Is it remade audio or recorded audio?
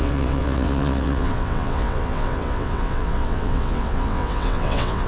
remade